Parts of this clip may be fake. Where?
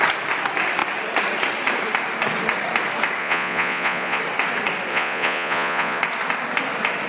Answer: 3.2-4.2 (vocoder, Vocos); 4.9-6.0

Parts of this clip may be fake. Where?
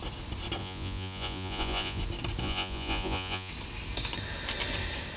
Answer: 0.6-2.0 (vocoder, Vocos); 2.4-3.5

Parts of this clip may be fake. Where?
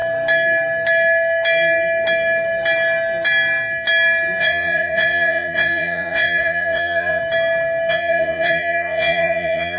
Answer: 4.4-7.2 (vocoder, Vocos); 7.9-9.8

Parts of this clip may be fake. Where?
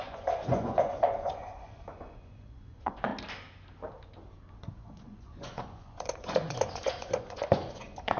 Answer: 0.0-3.1 (vocoder, Vocos); 4.5-8.2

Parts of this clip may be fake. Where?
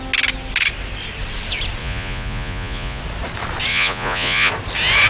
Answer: 1.8-3.0 (vocoder, Vocos); 3.7-4.5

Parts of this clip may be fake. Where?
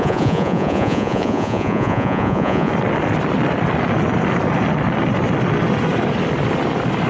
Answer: 0.0-2.7 (vocoder, Vocos)